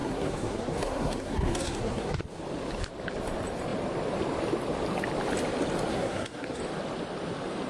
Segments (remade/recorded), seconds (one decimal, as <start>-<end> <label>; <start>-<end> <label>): 0.0-2.2 remade; 2.2-5.9 recorded; 5.9-6.6 remade; 6.6-7.7 recorded